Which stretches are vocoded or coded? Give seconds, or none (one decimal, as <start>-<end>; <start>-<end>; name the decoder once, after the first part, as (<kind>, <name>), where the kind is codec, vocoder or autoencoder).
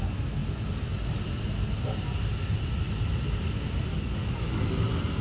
3.9-4.6 (codec, DAC)